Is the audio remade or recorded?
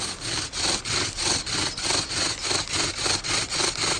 recorded